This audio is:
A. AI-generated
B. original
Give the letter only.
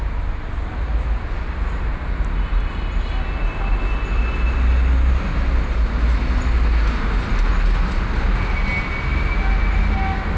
B